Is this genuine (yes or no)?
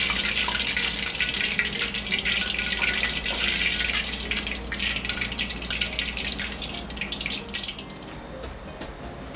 yes